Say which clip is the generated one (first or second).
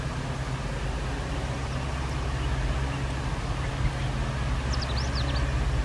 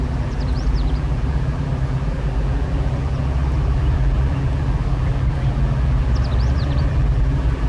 second